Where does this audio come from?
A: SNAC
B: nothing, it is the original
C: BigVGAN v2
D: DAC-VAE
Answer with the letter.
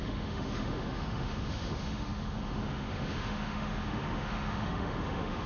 D